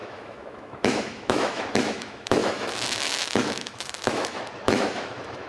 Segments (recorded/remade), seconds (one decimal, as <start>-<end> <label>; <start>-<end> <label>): 0.0-5.5 remade